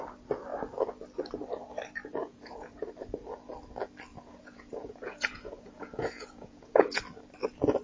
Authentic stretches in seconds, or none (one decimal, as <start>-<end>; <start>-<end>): 0.0-2.2; 2.9-4.1; 7.0-7.8